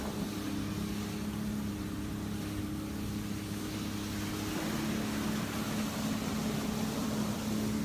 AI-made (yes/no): no